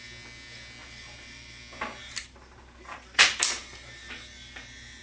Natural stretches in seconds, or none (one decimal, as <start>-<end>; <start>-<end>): 0.0-0.8; 1.6-2.0